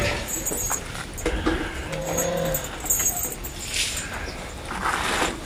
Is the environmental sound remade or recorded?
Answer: recorded